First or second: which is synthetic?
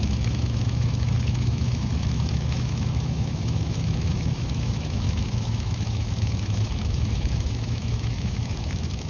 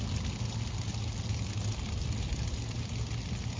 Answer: first